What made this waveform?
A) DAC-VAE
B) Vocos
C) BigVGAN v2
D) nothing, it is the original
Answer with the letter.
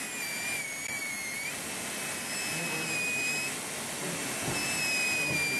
D